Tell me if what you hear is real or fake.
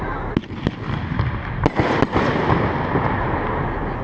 real